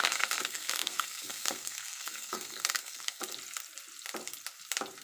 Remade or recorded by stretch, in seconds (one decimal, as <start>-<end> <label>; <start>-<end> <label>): 0.0-3.2 remade; 3.2-5.0 recorded